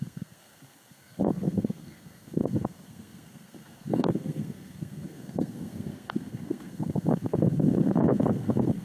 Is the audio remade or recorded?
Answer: remade